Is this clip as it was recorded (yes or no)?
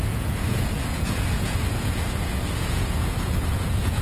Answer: no